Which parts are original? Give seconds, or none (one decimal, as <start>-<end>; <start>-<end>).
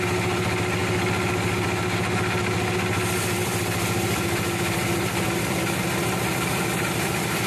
0.0-3.4